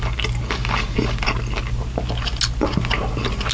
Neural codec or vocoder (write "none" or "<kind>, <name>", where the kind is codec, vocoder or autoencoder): none